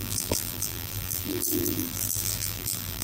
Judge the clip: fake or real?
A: fake